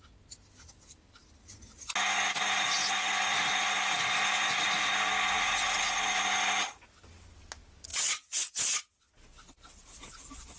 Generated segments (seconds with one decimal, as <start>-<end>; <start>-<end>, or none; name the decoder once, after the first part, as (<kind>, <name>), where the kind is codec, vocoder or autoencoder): 7.9-9.1 (vocoder, WaveNeXt)